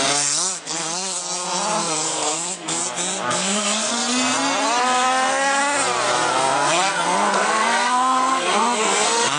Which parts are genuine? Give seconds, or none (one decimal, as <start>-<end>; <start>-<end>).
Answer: 1.2-1.8; 2.8-3.3; 4.0-4.8; 5.6-6.3

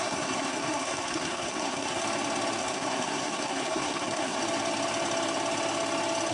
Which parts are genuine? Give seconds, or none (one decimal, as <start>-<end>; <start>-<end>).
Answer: 2.0-2.6; 4.4-6.3

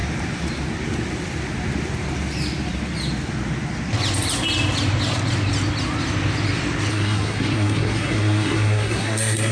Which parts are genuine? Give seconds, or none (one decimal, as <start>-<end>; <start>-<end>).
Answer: 0.0-6.9